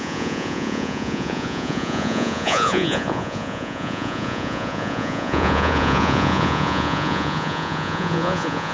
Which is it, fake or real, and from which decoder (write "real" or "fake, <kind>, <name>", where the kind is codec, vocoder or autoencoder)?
fake, vocoder, Vocos